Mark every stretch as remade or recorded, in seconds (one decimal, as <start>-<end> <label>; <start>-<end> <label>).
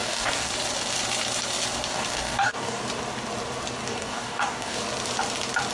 0.0-0.5 remade; 0.5-1.9 recorded; 1.9-2.8 remade; 2.8-3.9 recorded; 3.9-4.8 remade; 4.8-5.7 recorded